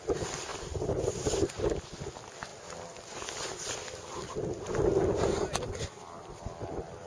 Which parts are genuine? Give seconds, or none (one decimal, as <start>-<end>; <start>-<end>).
0.0-7.1